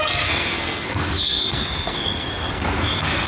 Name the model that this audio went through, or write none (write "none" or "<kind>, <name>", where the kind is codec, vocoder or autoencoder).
codec, SNAC